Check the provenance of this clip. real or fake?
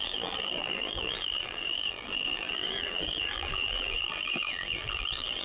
fake